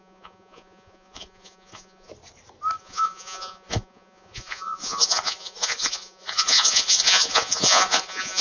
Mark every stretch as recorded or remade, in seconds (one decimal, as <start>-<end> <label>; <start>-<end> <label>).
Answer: 0.0-2.1 remade; 2.1-2.8 recorded; 2.8-8.4 remade